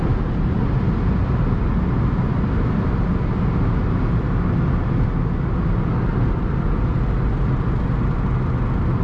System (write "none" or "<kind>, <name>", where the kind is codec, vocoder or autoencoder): none